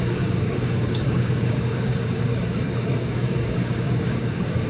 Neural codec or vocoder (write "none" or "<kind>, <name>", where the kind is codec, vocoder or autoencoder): codec, DAC